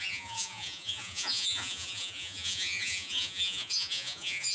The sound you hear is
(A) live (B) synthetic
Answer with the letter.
B